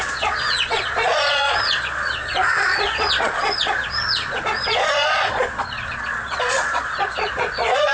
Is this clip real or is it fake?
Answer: fake